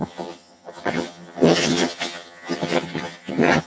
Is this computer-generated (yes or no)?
yes